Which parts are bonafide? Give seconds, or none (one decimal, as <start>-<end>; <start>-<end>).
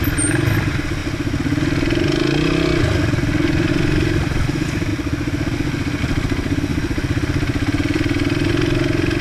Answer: 1.0-3.7; 4.9-6.0